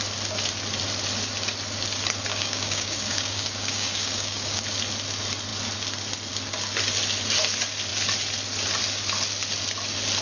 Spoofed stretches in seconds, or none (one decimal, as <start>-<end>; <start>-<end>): 2.3-4.6